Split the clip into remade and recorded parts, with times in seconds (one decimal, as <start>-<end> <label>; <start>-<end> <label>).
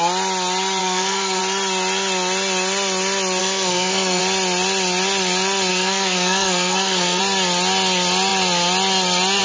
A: 0.0-0.8 recorded; 0.8-1.4 remade; 1.4-3.4 recorded; 3.4-4.2 remade; 4.2-5.7 recorded; 5.7-7.2 remade; 7.2-9.4 recorded